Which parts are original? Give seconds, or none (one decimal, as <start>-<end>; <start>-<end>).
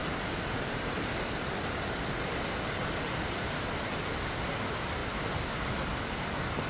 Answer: 1.6-6.7